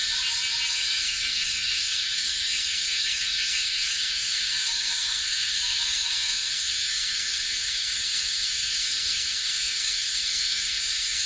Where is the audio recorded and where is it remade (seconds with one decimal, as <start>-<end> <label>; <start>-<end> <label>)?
0.0-0.7 recorded; 0.7-11.3 remade